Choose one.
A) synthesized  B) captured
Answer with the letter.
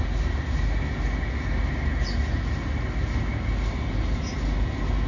B